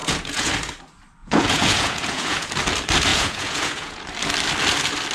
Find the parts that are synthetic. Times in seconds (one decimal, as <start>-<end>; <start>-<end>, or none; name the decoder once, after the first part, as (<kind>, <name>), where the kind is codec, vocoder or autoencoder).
0.0-0.5 (vocoder, Vocos); 1.2-2.5; 3.1-4.0